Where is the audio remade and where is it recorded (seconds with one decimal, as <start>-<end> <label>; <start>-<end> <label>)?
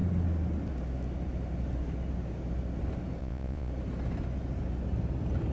0.0-3.2 recorded; 3.2-3.7 remade; 3.7-5.5 recorded